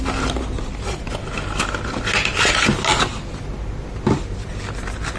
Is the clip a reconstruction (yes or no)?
no